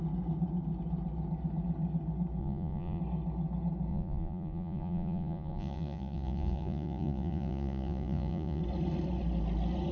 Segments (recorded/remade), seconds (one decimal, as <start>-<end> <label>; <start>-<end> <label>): 0.0-2.4 recorded; 2.4-3.0 remade; 3.0-3.9 recorded; 3.9-8.6 remade; 8.6-9.9 recorded